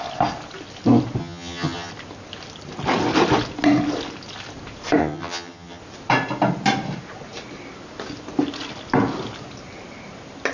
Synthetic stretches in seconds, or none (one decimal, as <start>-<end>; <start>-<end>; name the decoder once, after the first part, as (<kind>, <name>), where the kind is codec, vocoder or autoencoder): 1.2-1.9 (vocoder, HiFi-GAN); 5.0-5.8